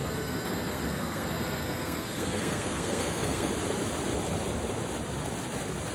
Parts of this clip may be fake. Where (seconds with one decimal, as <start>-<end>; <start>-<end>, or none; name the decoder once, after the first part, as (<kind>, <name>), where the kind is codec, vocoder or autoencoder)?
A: 0.0-3.5 (codec, SNAC)